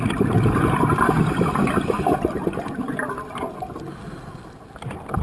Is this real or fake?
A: real